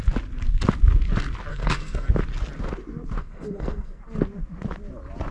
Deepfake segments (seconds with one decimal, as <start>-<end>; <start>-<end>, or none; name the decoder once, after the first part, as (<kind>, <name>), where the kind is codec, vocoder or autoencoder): 1.5-2.1 (codec, SNAC); 3.2-4.0